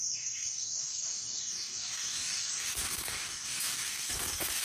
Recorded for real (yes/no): no